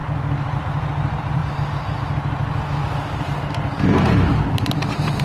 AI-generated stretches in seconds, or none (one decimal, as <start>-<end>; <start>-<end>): 0.6-1.4; 4.5-5.2